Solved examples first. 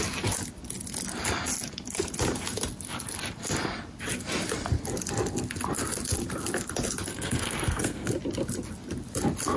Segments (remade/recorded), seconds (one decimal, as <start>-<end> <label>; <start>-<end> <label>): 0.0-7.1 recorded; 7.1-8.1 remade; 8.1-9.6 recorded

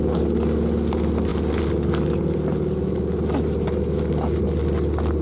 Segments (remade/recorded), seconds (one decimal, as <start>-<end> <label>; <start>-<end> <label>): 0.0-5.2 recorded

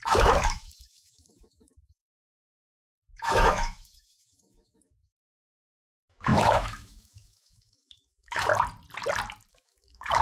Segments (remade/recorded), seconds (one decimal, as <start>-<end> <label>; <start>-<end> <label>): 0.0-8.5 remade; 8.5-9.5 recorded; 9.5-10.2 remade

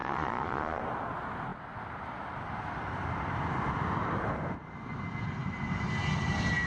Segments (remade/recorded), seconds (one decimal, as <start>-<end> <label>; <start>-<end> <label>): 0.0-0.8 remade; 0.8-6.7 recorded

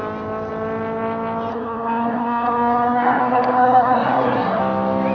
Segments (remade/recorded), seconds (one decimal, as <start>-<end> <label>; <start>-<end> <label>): 0.0-1.5 recorded; 1.5-4.6 remade; 4.6-5.1 recorded

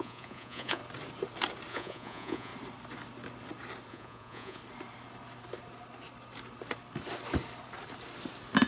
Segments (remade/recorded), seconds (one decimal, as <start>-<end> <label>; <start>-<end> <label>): 0.0-0.8 remade; 0.8-1.7 recorded; 1.7-2.5 remade; 2.5-3.9 recorded; 3.9-4.6 remade; 4.6-8.7 recorded

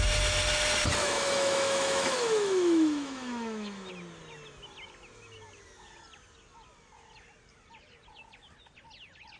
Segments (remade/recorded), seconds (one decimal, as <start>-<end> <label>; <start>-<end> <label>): 0.0-1.0 recorded; 1.0-3.9 remade; 3.9-9.4 recorded

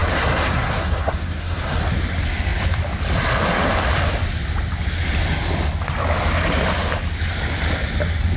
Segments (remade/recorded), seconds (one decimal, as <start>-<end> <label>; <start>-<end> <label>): 0.0-1.8 remade; 1.8-8.4 recorded